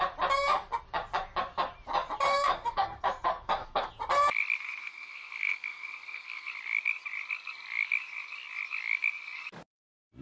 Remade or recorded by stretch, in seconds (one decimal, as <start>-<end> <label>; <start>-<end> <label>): 0.0-2.3 recorded; 2.3-3.9 remade; 3.9-4.8 recorded; 4.8-6.5 remade; 6.5-10.2 recorded